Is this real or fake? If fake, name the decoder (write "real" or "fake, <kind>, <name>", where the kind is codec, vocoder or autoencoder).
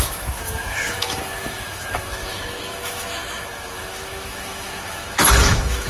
fake, autoencoder, DAC-VAE